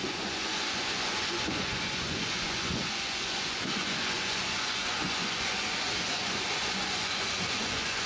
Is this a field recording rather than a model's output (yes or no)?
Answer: no